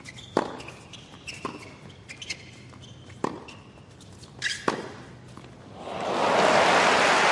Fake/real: real